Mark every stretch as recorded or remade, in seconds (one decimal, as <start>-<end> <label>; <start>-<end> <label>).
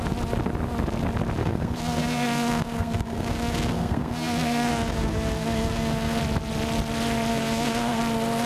0.0-1.4 recorded; 1.4-6.2 remade; 6.2-7.3 recorded; 7.3-8.0 remade; 8.0-8.5 recorded